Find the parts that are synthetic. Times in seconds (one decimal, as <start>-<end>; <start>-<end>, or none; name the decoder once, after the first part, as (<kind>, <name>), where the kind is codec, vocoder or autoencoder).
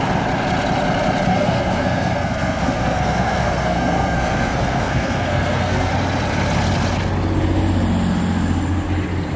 1.3-5.9 (codec, SNAC)